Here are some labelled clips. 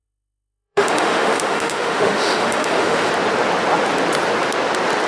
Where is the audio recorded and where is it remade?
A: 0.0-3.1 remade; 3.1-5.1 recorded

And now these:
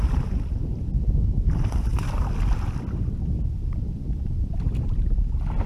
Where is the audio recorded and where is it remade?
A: 0.0-5.7 recorded

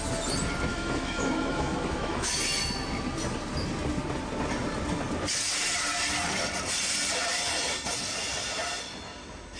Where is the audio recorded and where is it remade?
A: 0.0-0.7 recorded; 0.7-2.4 remade; 2.4-9.6 recorded

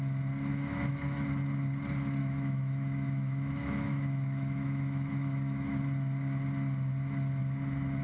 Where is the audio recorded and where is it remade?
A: 0.0-0.5 recorded; 0.5-1.3 remade; 1.3-2.2 recorded; 2.2-5.8 remade; 5.8-8.0 recorded

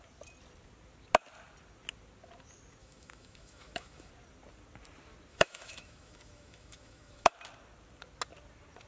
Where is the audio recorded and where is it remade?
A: 0.0-2.8 recorded; 2.8-4.1 remade; 4.1-5.3 recorded; 5.3-7.3 remade; 7.3-8.9 recorded

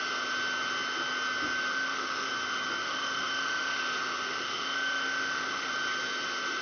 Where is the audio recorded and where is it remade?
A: 0.0-1.7 recorded; 1.7-2.3 remade; 2.3-2.8 recorded; 2.8-3.8 remade; 3.8-4.3 recorded; 4.3-5.7 remade; 5.7-6.6 recorded

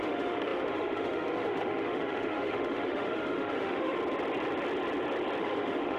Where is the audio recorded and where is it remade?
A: 0.0-4.0 remade; 4.0-5.4 recorded; 5.4-6.0 remade

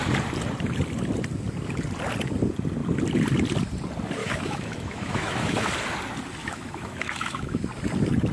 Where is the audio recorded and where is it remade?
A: 0.0-4.2 recorded; 4.2-5.7 remade; 5.7-6.4 recorded; 6.4-7.6 remade; 7.6-8.3 recorded